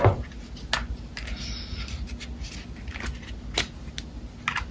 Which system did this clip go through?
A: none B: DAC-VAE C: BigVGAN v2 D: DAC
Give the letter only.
A